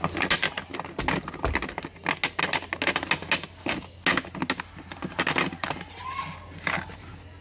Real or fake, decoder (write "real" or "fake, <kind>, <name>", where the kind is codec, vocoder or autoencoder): real